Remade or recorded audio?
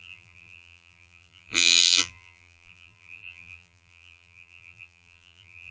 remade